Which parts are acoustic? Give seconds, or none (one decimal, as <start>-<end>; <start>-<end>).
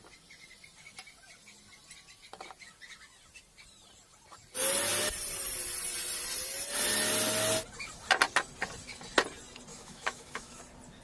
0.0-9.7; 10.6-11.0